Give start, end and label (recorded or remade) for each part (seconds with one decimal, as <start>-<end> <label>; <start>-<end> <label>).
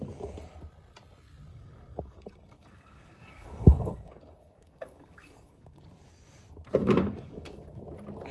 0.0-1.5 recorded; 1.5-5.8 remade; 5.8-6.8 recorded; 6.8-7.8 remade; 7.8-8.3 recorded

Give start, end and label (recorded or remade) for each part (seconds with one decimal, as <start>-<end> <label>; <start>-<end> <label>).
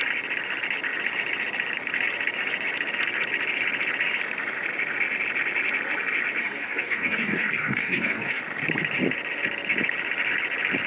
0.0-6.4 recorded; 6.4-8.4 remade; 8.4-10.9 recorded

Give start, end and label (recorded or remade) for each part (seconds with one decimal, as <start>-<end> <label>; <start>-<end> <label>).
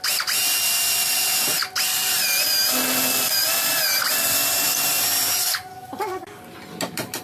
0.0-5.4 recorded; 5.4-6.4 remade; 6.4-7.2 recorded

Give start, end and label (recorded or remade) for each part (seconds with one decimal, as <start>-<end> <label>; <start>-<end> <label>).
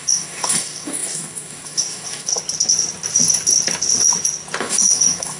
0.0-2.3 remade; 2.3-4.6 recorded; 4.6-5.4 remade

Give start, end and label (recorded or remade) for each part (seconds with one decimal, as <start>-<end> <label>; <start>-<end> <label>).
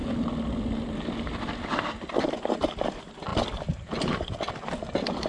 0.0-5.3 recorded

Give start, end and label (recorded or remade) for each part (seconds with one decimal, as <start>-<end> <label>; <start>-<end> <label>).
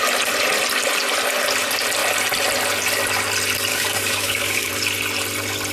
0.0-3.7 recorded; 3.7-4.7 remade; 4.7-5.7 recorded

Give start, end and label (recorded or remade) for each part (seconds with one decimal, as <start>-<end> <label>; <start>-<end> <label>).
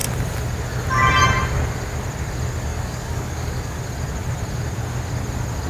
0.0-2.7 recorded; 2.7-3.8 remade; 3.8-5.7 recorded